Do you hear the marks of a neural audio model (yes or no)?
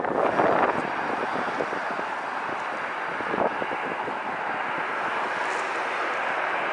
no